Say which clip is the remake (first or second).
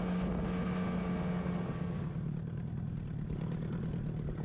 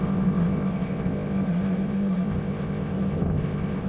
second